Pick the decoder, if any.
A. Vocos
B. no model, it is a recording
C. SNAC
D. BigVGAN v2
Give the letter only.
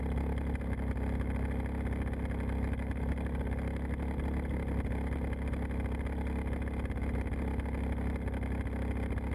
B